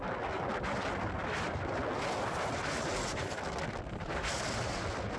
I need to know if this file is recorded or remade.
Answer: recorded